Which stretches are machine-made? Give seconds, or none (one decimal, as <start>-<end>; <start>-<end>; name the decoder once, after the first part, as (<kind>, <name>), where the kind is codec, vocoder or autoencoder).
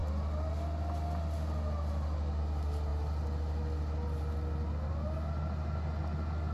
none